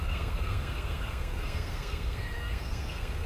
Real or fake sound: fake